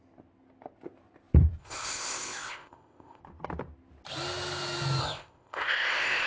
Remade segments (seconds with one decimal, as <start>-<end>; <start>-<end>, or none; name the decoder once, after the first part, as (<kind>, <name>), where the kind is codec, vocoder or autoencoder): 1.6-3.2 (codec, ZipCodec); 5.0-6.3